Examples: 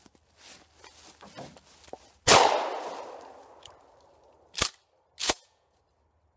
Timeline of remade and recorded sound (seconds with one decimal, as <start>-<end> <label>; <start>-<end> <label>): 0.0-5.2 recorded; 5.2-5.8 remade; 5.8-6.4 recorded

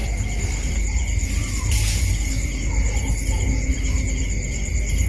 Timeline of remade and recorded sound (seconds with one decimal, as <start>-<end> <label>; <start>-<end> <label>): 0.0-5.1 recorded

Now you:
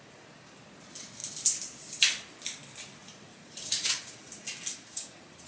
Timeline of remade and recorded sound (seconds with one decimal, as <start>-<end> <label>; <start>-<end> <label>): 0.0-3.0 recorded; 3.0-4.3 remade; 4.3-4.7 recorded; 4.7-5.5 remade